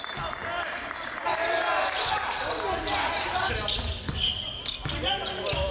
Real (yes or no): yes